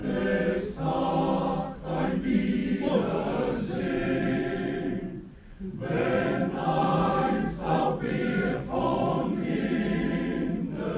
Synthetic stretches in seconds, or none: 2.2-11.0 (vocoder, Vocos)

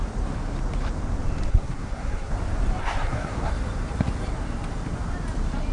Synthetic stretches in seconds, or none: 1.5-2.3 (codec, SNAC); 2.8-3.5

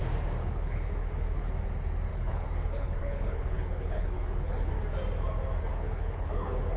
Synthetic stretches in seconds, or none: 0.4-1.5 (codec, HILCodec); 2.1-4.7; 5.7-6.8

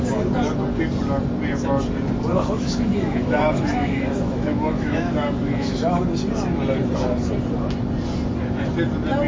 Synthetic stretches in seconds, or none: 2.3-6.0 (autoencoder, DAC-VAE)

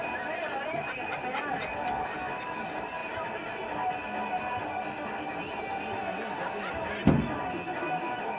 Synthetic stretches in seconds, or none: none

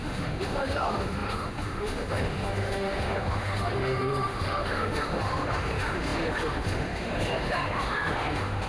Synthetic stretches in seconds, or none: 0.0-8.7 (autoencoder, DAC-VAE)